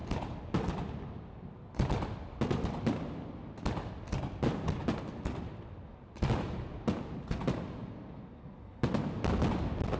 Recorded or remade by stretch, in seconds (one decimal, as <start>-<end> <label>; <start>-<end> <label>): 0.0-10.0 recorded